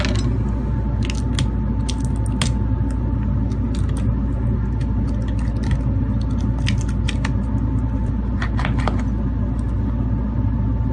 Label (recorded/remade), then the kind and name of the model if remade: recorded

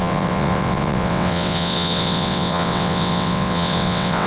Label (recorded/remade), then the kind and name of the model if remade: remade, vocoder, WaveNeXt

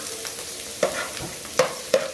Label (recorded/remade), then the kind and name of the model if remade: remade, vocoder, BigVGAN v2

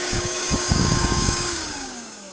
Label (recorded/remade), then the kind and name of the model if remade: remade, codec, DAC